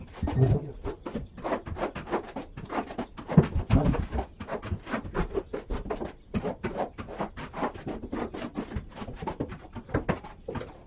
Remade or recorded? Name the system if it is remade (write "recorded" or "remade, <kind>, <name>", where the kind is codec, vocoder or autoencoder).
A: recorded